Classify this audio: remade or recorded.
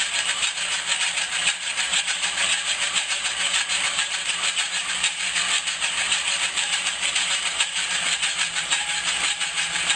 remade